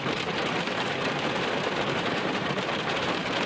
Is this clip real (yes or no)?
no